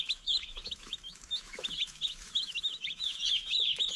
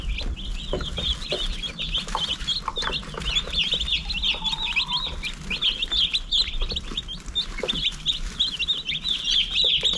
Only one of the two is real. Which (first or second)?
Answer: second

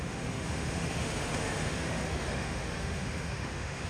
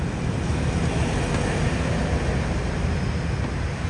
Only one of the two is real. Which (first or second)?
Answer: second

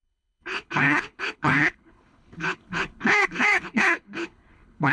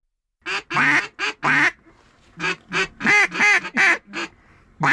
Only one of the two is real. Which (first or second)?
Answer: second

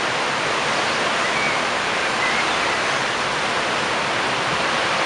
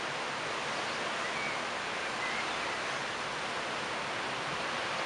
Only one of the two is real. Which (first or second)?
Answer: second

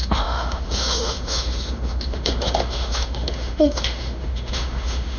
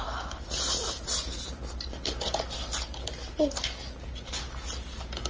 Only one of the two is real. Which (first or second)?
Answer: second